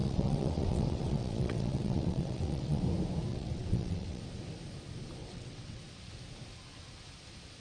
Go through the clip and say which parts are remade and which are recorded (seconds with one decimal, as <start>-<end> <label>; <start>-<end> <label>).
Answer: 0.0-2.8 remade; 2.8-3.3 recorded; 3.3-4.2 remade; 4.2-5.2 recorded; 5.2-5.8 remade; 5.8-7.6 recorded